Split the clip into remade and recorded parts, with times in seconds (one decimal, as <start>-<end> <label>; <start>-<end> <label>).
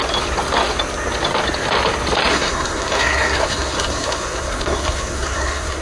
0.0-2.3 recorded; 2.3-5.8 remade